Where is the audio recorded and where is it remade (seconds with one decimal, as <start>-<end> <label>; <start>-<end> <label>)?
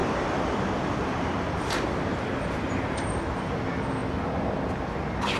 0.0-3.2 remade; 3.2-4.0 recorded; 4.0-4.7 remade; 4.7-5.4 recorded